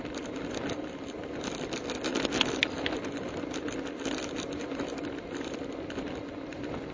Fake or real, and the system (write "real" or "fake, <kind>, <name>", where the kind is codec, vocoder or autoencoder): real